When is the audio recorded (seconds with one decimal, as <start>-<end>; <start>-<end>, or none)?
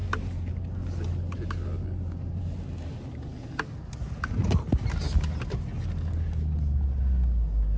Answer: 0.0-7.8